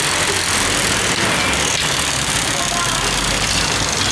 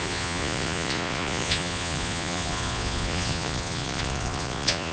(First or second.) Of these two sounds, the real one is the first